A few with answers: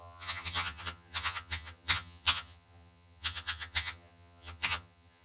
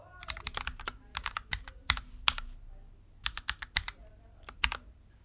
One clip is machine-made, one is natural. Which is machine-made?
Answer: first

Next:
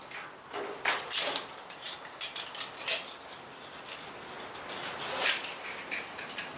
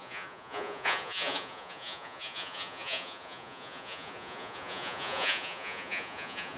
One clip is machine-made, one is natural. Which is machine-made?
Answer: second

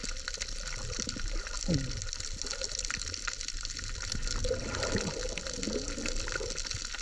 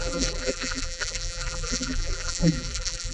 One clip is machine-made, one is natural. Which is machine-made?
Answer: second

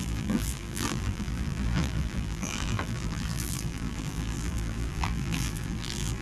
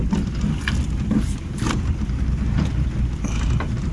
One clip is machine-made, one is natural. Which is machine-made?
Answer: first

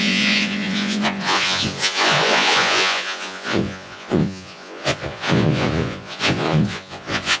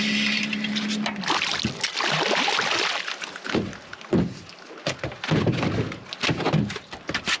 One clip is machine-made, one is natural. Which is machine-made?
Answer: first